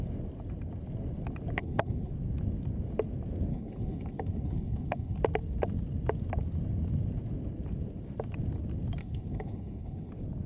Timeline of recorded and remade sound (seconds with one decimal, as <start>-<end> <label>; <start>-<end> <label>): 0.0-1.6 recorded; 1.6-2.1 remade; 2.1-3.5 recorded; 3.5-5.2 remade; 5.2-9.0 recorded; 9.0-10.1 remade; 10.1-10.5 recorded